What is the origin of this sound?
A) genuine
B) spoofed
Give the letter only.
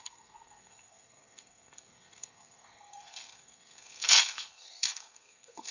B